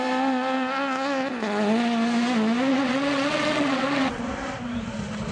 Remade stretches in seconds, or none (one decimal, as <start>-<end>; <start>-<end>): 2.7-4.2